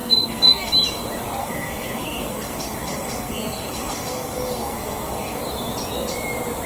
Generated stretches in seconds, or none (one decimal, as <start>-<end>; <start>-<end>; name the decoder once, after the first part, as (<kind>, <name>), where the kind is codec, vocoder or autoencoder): 0.0-0.7 (codec, SNAC); 1.4-5.4